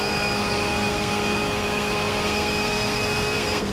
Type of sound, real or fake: fake